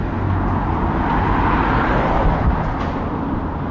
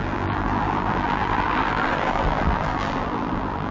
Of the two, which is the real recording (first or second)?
first